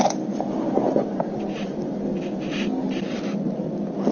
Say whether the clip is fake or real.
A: real